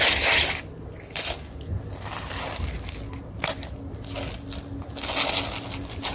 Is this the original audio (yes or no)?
yes